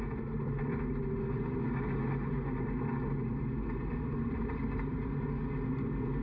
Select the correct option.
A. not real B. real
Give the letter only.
B